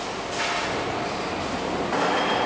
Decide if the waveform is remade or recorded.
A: recorded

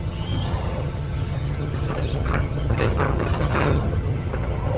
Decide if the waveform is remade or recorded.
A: remade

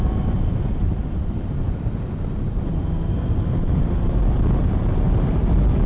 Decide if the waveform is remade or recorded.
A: recorded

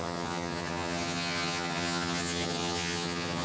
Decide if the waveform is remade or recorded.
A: remade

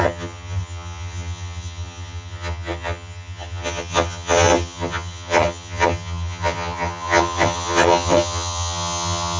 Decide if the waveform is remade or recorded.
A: remade